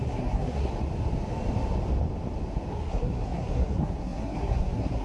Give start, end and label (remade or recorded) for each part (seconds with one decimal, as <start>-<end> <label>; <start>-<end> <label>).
0.0-0.7 remade; 0.7-2.7 recorded; 2.7-5.0 remade